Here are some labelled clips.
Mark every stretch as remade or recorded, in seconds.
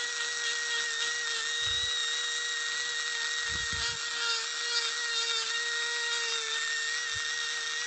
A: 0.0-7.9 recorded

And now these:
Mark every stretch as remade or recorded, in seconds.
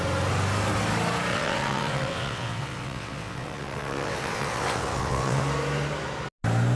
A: 0.0-1.3 recorded; 1.3-5.4 remade; 5.4-6.8 recorded